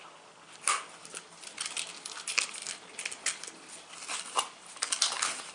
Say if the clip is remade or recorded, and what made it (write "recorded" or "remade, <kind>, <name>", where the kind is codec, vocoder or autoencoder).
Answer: recorded